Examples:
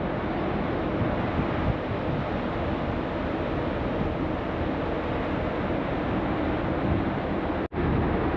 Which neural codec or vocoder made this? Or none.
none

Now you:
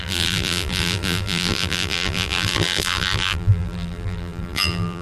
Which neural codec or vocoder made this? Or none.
vocoder, BigVGAN v2